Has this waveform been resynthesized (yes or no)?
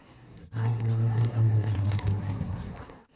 yes